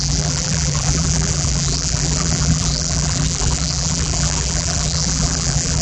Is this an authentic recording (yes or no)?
no